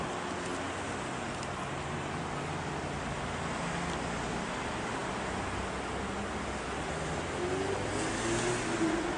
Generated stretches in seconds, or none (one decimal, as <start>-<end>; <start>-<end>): none